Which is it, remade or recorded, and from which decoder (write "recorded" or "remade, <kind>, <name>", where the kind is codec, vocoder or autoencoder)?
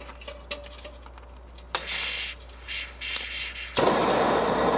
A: recorded